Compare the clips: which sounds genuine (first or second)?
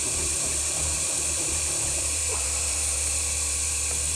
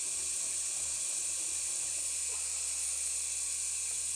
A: second